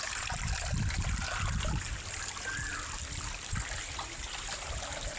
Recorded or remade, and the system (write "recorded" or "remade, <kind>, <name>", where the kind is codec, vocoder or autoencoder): remade, vocoder, BigVGAN v2